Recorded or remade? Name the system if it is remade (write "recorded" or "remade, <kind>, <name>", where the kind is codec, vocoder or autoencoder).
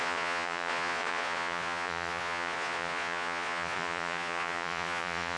remade, vocoder, Vocos